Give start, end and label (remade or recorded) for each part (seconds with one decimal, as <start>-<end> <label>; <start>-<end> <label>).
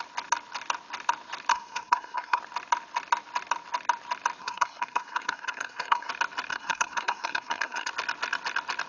0.0-1.5 recorded; 1.5-2.4 remade; 2.4-4.4 recorded; 4.4-6.1 remade; 6.1-6.5 recorded; 6.5-7.9 remade; 7.9-8.9 recorded